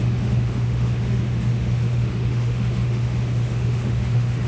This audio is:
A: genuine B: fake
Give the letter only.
B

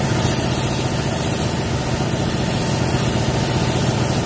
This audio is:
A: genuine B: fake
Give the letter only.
A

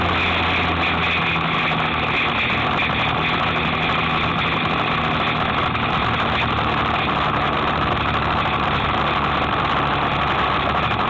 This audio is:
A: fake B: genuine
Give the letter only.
B